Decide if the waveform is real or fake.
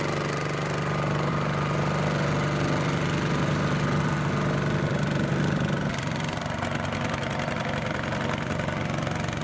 real